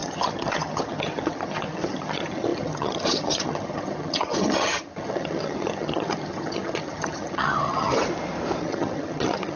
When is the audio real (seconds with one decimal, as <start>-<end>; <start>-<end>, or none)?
7.9-8.6